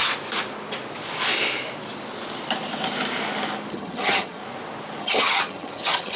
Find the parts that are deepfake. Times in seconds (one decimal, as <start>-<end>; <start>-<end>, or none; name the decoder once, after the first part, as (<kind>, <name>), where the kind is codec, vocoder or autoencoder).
3.7-4.4 (vocoder, HiFi-GAN); 5.0-6.2